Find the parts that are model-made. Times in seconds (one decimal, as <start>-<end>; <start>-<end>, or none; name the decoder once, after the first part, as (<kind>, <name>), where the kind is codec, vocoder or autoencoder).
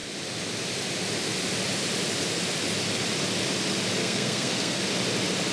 4.0-4.8 (codec, SNAC)